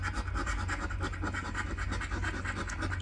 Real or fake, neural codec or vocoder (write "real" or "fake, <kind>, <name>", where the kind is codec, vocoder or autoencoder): real